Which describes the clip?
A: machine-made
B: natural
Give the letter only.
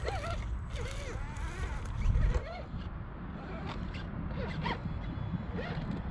B